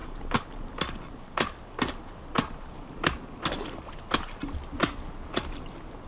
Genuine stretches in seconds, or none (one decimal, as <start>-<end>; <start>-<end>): 0.0-6.1